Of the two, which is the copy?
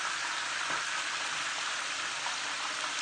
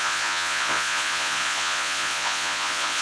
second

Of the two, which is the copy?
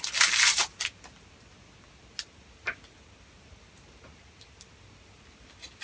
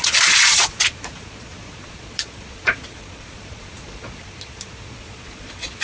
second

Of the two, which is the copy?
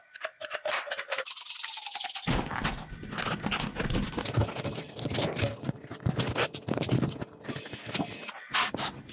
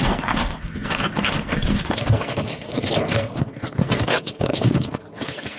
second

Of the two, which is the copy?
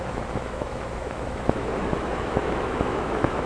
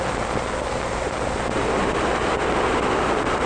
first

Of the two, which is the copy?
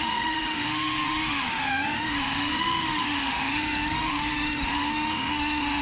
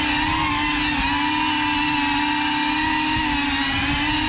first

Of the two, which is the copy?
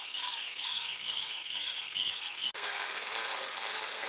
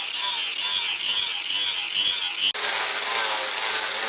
first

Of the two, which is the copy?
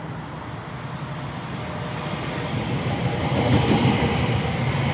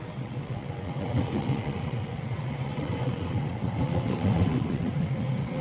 second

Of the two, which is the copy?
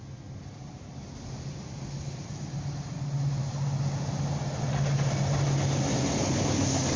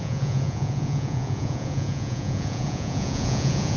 second